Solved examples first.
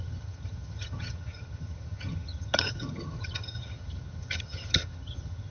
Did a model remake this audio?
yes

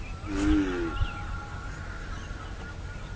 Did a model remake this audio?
no